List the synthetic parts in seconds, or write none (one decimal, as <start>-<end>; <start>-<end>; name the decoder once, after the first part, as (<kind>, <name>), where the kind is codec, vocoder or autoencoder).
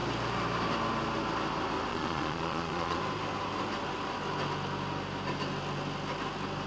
1.9-3.0 (vocoder, Vocos)